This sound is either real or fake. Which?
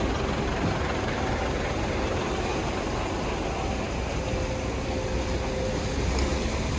real